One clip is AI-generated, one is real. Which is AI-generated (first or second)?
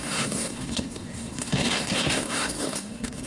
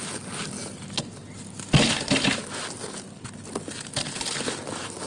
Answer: first